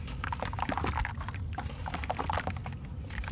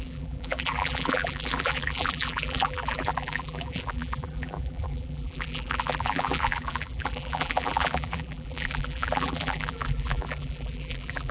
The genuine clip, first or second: first